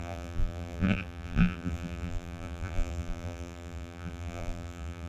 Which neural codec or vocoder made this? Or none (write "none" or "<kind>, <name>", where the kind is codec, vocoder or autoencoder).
vocoder, BigVGAN v2